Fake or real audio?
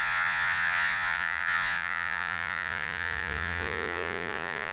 fake